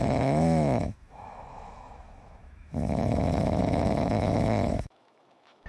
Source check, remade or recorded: remade